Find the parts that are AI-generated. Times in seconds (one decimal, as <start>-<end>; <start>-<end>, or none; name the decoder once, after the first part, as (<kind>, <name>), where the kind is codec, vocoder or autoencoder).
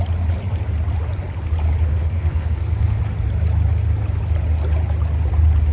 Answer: 1.9-3.0 (codec, SNAC)